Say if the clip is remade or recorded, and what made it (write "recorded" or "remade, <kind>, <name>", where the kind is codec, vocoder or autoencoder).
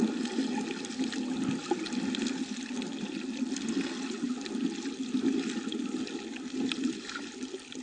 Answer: recorded